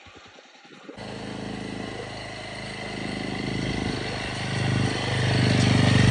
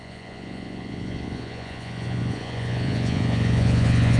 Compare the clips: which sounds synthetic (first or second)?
second